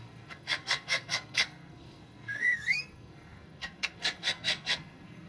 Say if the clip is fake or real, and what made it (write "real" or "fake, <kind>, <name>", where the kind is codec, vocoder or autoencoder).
fake, codec, SNAC